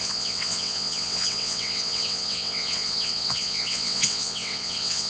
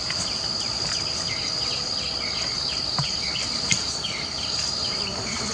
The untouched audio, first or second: second